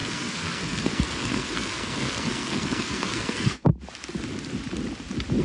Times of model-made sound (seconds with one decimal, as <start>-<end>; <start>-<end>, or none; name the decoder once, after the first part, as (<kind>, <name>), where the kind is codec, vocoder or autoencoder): 0.0-3.7 (codec, SNAC)